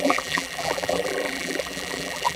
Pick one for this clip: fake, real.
fake